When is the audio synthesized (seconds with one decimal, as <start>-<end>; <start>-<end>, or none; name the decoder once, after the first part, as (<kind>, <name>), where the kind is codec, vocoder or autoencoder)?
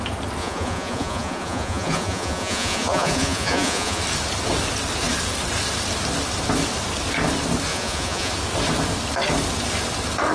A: 0.4-4.0 (vocoder, Vocos); 7.7-8.3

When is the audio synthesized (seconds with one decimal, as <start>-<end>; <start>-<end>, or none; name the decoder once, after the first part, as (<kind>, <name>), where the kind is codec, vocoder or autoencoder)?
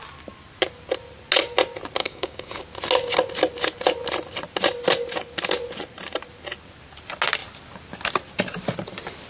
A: 2.0-2.6 (codec, DAC)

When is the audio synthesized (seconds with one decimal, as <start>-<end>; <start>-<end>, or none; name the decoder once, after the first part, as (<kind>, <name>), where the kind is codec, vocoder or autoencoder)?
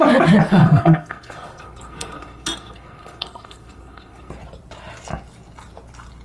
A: 0.6-4.3 (codec, SNAC)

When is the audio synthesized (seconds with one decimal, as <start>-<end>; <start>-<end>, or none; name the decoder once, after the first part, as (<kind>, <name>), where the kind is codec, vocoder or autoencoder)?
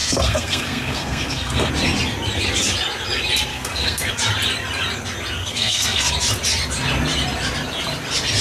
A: 0.0-1.7 (codec, SNAC); 3.5-4.1; 5.4-6.1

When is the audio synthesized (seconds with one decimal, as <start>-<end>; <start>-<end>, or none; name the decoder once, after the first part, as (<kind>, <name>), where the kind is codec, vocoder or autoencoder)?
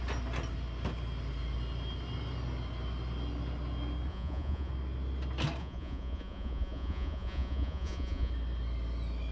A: 4.1-4.7 (vocoder, Vocos); 5.6-8.3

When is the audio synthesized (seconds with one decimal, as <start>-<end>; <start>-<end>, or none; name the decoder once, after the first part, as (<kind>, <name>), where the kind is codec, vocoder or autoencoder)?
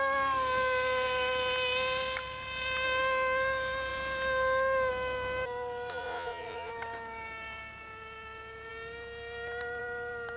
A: 5.9-6.7 (vocoder, Vocos)